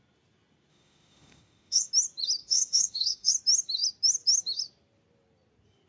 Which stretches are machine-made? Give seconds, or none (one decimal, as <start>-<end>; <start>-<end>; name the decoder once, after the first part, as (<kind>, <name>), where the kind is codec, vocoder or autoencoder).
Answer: 0.7-1.9 (autoencoder, DAC-VAE); 2.4-3.3